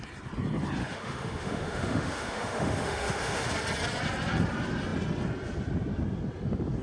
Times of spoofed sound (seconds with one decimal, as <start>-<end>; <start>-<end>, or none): 0.8-3.5